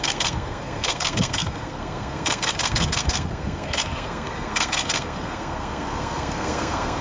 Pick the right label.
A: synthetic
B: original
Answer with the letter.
A